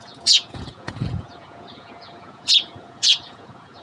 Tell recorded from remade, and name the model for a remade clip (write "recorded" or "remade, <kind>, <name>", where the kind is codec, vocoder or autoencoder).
remade, vocoder, Vocos